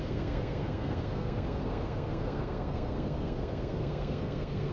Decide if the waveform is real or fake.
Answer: fake